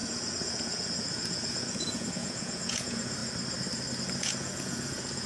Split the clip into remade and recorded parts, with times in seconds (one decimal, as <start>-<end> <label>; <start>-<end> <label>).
0.0-3.2 remade; 3.2-4.0 recorded; 4.0-5.3 remade